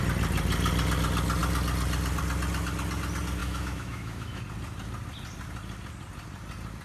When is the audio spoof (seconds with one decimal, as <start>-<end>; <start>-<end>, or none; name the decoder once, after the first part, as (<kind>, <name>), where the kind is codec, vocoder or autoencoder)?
3.4-4.4 (autoencoder, DAC-VAE)